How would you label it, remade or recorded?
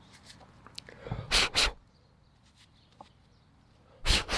recorded